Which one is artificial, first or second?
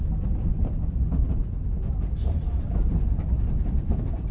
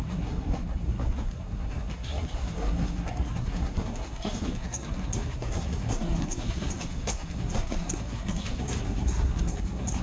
second